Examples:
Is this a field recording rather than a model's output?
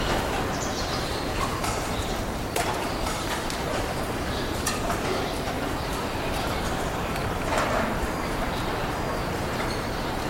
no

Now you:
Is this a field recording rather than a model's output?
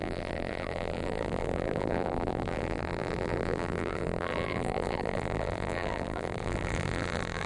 no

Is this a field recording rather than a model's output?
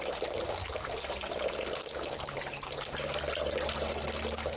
yes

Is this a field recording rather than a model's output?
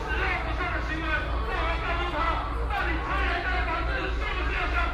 yes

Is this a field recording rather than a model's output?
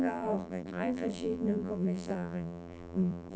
no